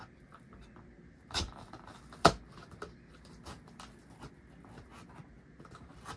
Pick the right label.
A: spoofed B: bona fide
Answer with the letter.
B